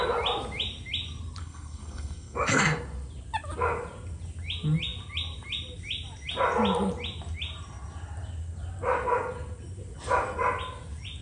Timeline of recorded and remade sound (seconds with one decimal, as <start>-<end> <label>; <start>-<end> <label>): 0.0-1.4 recorded; 1.4-2.6 remade; 2.6-11.2 recorded